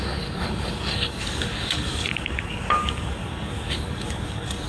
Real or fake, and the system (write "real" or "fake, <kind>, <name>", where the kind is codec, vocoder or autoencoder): fake, codec, DAC